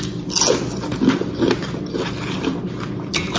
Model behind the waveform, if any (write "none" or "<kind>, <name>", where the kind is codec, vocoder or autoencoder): none